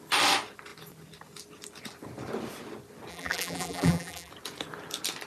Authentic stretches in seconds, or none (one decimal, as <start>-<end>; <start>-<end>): 0.0-3.1; 4.3-5.3